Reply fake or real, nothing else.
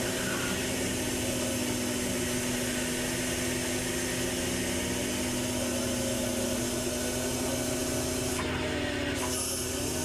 real